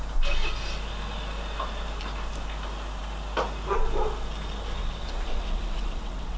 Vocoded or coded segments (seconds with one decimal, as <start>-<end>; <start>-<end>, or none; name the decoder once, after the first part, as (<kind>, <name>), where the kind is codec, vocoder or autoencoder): 4.8-6.4 (vocoder, WaveNeXt)